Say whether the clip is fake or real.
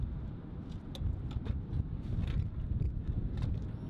real